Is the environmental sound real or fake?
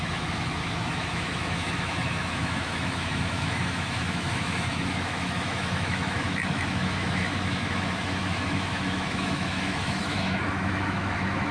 fake